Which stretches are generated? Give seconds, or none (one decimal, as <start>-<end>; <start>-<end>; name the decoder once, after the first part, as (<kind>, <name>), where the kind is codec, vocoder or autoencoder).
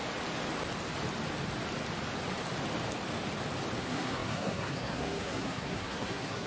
3.8-6.5 (codec, SNAC)